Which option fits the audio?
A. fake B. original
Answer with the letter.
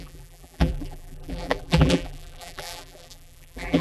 A